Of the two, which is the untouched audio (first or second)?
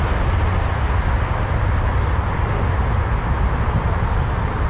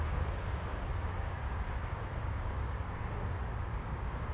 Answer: first